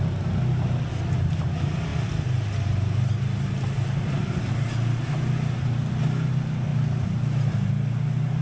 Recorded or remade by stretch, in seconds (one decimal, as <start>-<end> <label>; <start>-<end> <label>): 0.0-8.4 recorded